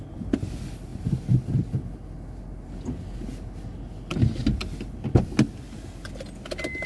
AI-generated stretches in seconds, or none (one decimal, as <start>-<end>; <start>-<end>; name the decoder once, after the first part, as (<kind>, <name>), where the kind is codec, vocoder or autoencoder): none